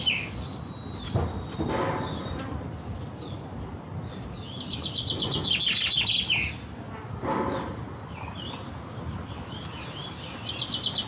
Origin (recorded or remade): recorded